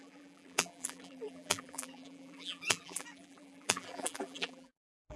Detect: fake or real fake